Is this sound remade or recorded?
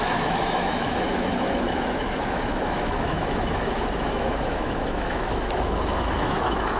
remade